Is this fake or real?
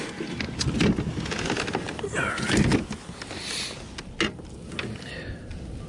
real